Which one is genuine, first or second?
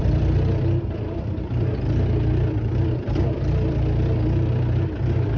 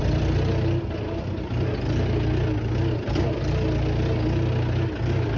second